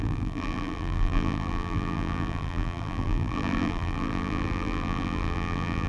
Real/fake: fake